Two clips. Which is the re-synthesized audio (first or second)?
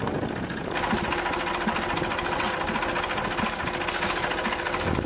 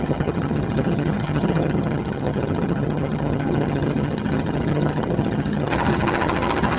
second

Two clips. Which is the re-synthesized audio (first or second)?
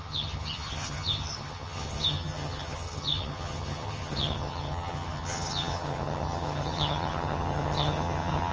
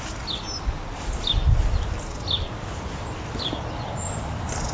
first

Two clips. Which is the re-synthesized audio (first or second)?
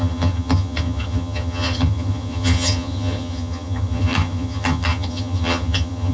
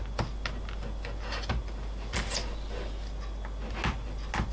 first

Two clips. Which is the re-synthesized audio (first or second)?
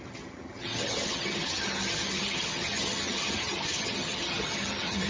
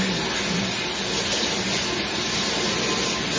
first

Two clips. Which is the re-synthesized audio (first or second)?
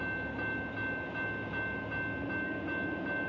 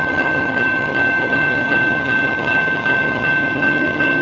second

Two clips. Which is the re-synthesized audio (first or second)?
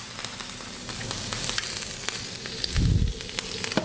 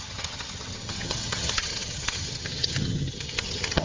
second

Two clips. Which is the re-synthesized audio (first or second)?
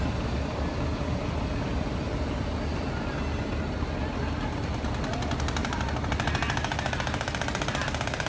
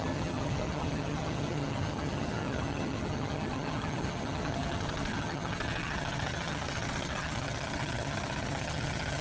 second